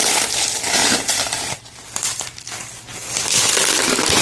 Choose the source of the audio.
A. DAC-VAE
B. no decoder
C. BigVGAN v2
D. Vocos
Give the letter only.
B